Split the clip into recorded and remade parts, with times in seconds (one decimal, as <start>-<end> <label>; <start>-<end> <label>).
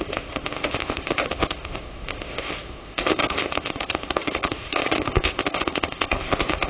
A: 0.0-6.7 remade